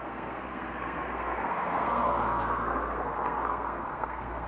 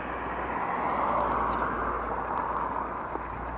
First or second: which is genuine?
second